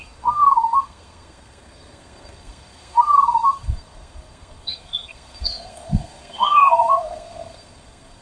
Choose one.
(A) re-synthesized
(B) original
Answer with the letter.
A